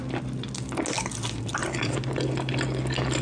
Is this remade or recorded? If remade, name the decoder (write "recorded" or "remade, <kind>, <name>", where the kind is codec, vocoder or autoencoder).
recorded